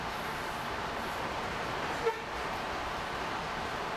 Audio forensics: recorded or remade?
recorded